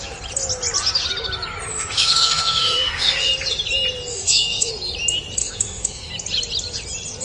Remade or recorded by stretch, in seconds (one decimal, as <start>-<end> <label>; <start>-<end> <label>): 0.0-1.7 recorded; 1.7-3.3 remade; 3.3-4.1 recorded; 4.1-4.7 remade; 4.7-5.4 recorded; 5.4-6.1 remade; 6.1-7.2 recorded